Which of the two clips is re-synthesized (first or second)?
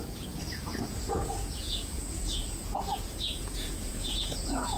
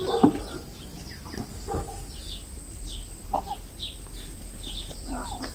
first